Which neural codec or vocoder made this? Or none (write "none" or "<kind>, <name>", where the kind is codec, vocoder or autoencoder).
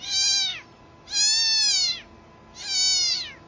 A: none